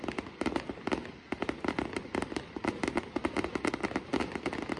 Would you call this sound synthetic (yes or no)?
no